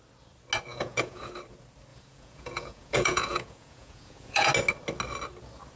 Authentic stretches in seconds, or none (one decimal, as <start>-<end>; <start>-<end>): 0.0-0.7; 1.3-1.9; 4.5-5.8